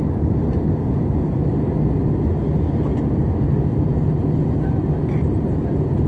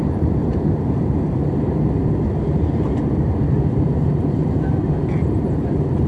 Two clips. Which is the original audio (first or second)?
first